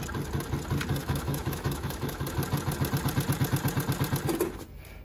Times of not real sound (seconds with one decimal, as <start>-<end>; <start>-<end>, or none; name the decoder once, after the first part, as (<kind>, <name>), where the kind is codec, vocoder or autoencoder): 1.0-2.2 (autoencoder, DAC-VAE)